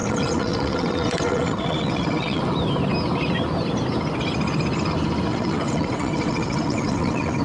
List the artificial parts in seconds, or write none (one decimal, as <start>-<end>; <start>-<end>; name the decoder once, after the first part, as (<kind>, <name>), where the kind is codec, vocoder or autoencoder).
0.0-2.4 (vocoder, WaveNeXt); 5.3-7.4